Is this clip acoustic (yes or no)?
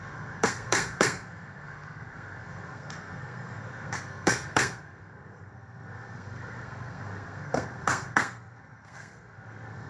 no